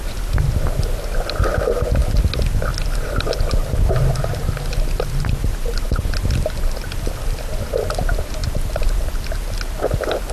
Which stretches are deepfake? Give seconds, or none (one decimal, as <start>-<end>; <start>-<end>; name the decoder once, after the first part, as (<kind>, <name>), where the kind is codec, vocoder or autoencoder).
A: none